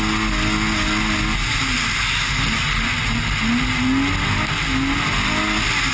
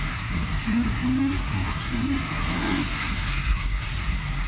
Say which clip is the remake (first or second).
second